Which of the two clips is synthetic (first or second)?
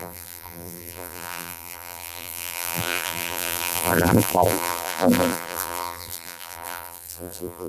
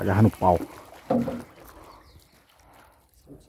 first